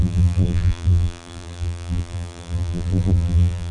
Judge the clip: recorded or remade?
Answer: remade